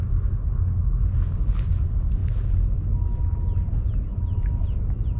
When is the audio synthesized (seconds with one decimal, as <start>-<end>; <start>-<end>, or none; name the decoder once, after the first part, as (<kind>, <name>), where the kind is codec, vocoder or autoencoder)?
none

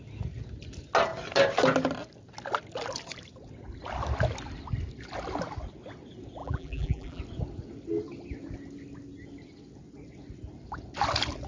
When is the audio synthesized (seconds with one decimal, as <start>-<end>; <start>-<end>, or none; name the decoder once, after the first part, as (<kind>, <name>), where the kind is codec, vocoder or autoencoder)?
6.4-7.2 (vocoder, BigVGAN v2)